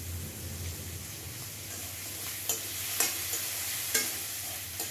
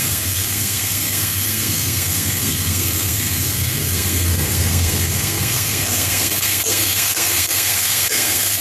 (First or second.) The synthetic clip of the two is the second